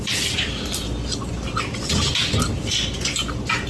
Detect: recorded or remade recorded